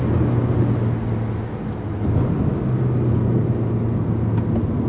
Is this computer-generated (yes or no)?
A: no